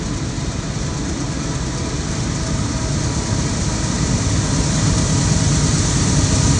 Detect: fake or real real